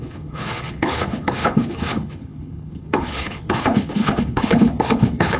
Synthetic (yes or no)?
yes